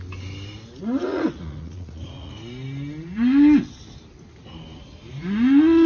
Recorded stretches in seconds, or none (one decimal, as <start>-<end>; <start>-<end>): 0.0-1.1; 2.3-5.9

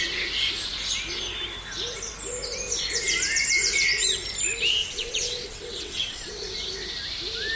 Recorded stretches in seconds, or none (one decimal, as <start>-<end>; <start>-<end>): 0.0-4.8; 6.3-7.6

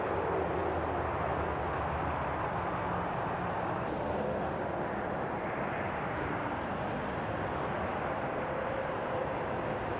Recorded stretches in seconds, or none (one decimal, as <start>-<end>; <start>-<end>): 0.0-10.0

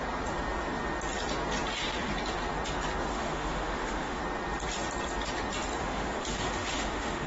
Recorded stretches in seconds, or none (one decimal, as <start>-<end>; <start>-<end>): 0.0-3.1; 4.2-5.8

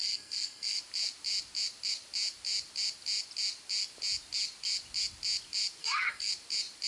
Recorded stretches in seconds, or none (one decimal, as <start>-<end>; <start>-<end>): 0.8-5.8; 6.3-6.9

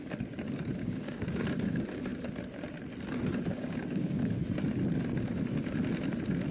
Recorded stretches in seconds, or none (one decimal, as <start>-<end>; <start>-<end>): 0.0-0.8; 1.4-3.5; 4.3-6.5

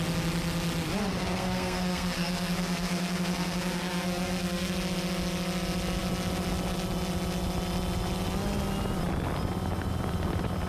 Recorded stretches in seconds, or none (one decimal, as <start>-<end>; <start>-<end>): 0.0-1.1; 4.7-10.7

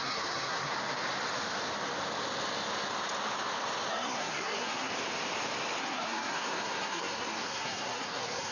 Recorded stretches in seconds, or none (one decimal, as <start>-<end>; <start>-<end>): 0.7-3.9; 4.9-5.8